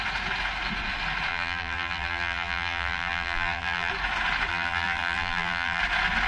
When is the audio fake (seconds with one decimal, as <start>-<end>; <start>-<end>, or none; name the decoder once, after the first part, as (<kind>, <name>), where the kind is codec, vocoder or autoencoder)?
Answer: 1.3-3.9 (vocoder, BigVGAN v2); 4.5-5.8